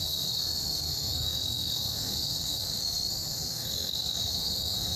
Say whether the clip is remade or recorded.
remade